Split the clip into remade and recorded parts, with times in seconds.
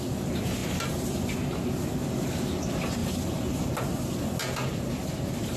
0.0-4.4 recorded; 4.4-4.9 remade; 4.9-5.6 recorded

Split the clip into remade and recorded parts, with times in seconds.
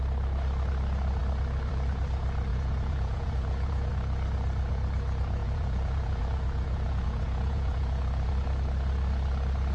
0.0-2.5 recorded; 2.5-3.9 remade; 3.9-5.4 recorded; 5.4-8.3 remade; 8.3-9.7 recorded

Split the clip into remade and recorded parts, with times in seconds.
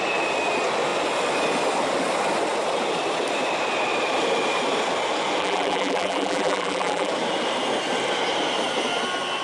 0.0-5.4 recorded; 5.4-7.1 remade; 7.1-9.4 recorded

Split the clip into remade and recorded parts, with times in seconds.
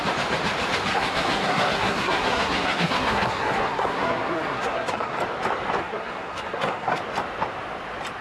0.0-0.9 recorded; 0.9-5.2 remade; 5.2-5.8 recorded; 5.8-7.0 remade; 7.0-8.2 recorded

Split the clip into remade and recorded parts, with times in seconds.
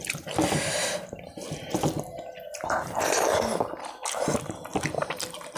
0.0-0.8 recorded; 0.8-4.2 remade; 4.2-5.6 recorded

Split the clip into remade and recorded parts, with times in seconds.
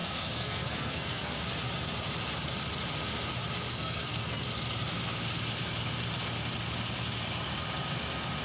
0.0-1.4 remade; 1.4-3.7 recorded; 3.7-4.4 remade; 4.4-8.4 recorded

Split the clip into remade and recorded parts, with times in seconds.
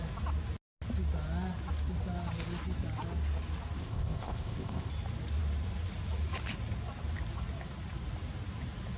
0.0-3.8 recorded; 3.8-4.9 remade; 4.9-9.0 recorded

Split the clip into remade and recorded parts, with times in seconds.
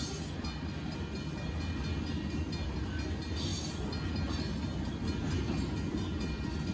0.0-6.7 recorded